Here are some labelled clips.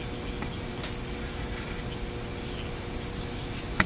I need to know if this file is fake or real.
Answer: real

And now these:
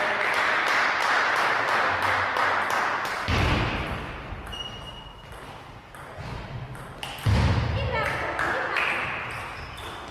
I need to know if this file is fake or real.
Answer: real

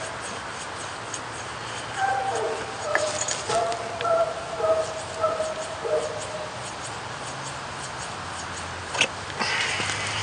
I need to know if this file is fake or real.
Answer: real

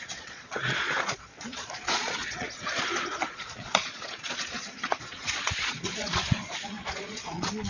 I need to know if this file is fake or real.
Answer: fake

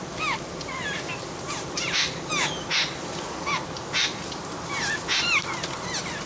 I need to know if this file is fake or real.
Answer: real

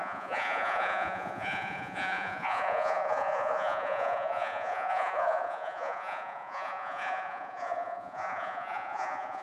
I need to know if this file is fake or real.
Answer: fake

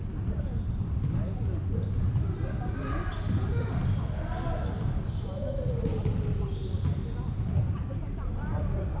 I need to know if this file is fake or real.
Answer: real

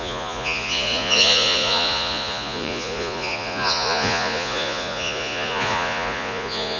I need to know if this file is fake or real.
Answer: fake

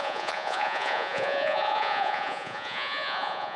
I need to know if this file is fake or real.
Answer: fake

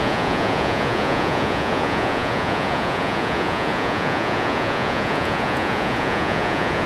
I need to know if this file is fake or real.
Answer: fake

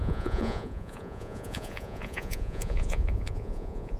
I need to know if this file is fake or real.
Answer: fake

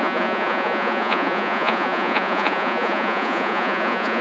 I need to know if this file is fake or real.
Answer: fake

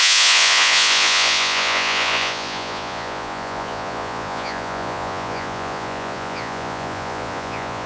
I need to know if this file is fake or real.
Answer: fake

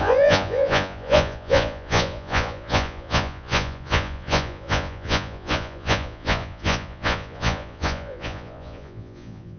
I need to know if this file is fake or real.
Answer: fake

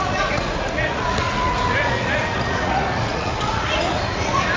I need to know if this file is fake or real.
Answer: fake